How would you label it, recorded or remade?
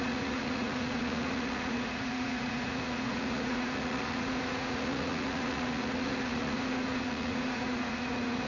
remade